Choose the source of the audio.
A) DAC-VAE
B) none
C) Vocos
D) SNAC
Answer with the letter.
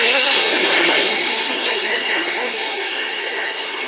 D